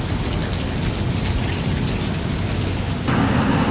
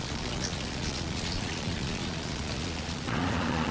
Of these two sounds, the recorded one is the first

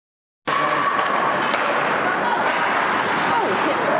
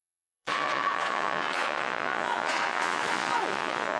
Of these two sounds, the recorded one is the first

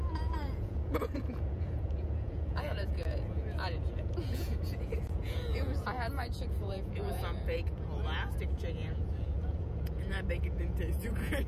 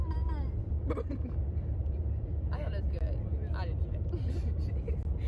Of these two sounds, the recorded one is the second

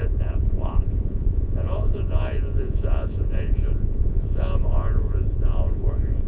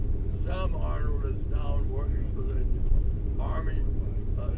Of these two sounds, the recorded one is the second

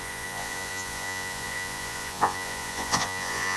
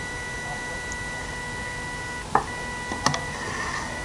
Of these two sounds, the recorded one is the second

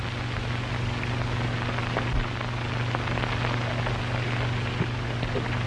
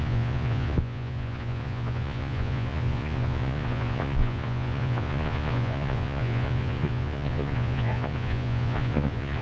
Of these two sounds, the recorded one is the first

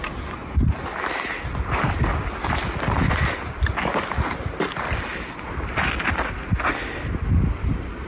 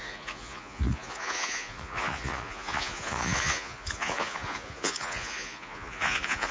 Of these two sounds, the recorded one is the first